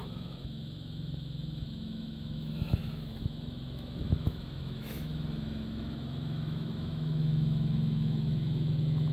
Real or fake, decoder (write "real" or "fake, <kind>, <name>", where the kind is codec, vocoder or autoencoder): fake, autoencoder, DAC-VAE